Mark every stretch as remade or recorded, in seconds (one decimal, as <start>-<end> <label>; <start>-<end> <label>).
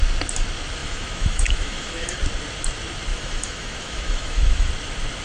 0.0-0.8 recorded; 0.8-2.2 remade; 2.2-3.1 recorded; 3.1-4.7 remade; 4.7-5.2 recorded